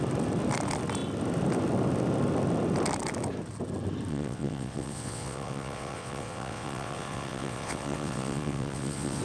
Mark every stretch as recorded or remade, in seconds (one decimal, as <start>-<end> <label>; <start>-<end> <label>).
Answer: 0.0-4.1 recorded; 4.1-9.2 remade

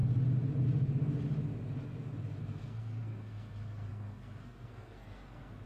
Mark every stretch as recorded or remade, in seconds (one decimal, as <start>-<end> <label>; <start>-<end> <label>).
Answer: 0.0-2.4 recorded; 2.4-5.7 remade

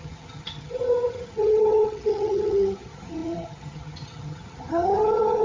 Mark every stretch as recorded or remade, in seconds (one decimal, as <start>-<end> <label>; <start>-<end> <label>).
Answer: 0.0-5.4 remade

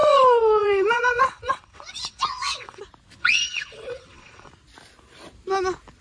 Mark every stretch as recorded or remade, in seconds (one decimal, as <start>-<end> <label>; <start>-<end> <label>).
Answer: 0.0-2.8 remade; 2.8-3.2 recorded; 3.2-4.5 remade; 4.5-6.0 recorded